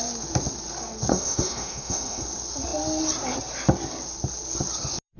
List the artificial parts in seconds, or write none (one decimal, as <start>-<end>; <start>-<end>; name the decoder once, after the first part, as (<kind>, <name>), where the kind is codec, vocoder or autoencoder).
1.1-2.2 (autoencoder, DAC-VAE)